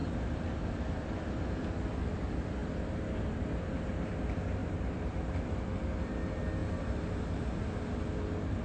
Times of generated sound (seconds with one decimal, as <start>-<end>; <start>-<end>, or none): 0.0-1.1; 4.6-5.3; 6.6-7.6